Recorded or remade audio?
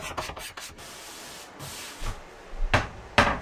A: recorded